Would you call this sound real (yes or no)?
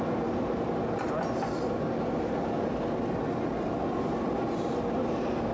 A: yes